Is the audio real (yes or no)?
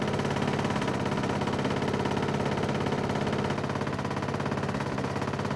yes